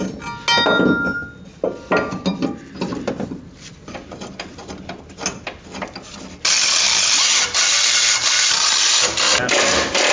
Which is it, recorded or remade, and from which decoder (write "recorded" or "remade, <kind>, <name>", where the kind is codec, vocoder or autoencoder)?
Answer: recorded